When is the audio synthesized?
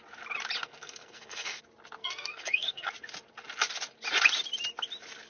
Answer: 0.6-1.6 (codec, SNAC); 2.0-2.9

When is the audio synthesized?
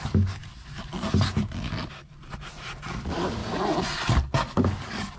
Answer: 0.0-0.4 (codec, DAC); 2.9-3.4; 4.2-5.2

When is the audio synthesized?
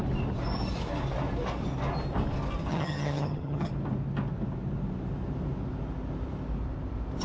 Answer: 2.7-3.7 (vocoder, HiFi-GAN)